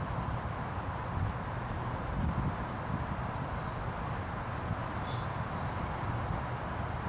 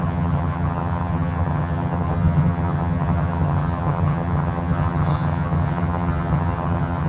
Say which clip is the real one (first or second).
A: first